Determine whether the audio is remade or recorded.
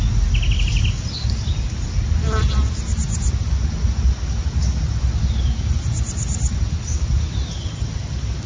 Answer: recorded